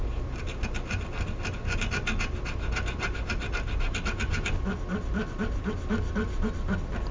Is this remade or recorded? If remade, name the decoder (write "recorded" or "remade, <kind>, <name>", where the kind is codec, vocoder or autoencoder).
recorded